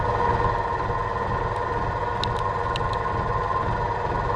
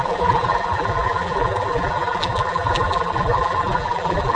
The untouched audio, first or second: first